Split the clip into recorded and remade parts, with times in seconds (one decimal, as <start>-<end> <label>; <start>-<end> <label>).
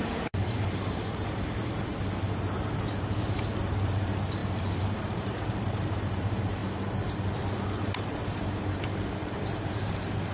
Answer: 0.0-1.9 remade; 1.9-3.6 recorded; 3.6-6.6 remade; 6.6-7.6 recorded; 7.6-10.3 remade